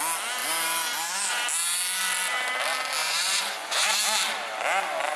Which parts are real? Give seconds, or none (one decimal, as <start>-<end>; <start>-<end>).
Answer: 0.0-3.0; 4.0-5.2